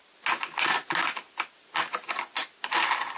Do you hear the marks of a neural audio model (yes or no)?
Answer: no